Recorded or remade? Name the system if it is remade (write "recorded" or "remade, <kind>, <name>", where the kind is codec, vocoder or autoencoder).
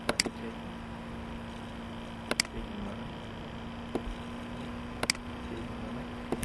recorded